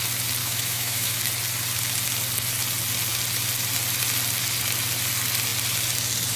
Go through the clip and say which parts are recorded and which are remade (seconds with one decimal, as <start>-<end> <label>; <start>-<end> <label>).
0.0-0.4 recorded; 0.4-1.2 remade; 1.2-6.4 recorded